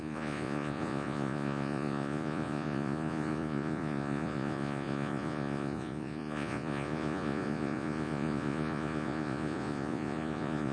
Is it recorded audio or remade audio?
remade